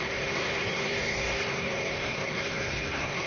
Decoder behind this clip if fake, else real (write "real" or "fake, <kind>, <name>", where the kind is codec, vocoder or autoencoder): fake, codec, SNAC